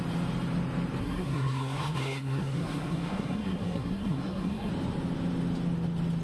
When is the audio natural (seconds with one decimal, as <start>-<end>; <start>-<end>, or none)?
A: 0.0-1.0; 4.7-6.2